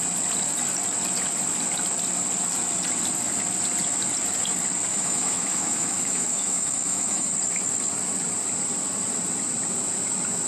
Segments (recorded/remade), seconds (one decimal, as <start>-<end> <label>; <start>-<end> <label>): 0.0-4.9 recorded; 4.9-7.3 remade; 7.3-10.5 recorded